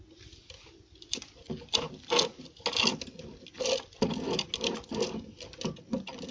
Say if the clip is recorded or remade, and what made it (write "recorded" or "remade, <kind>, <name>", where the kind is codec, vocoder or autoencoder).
recorded